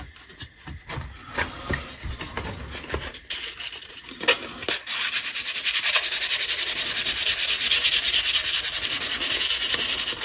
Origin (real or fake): real